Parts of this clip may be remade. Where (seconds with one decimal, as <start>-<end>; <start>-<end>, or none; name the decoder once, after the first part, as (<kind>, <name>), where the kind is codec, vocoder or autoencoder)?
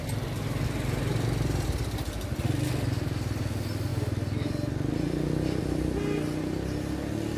none